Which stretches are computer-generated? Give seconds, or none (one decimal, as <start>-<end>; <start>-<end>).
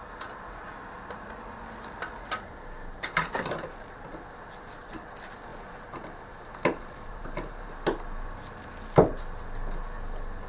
5.5-7.7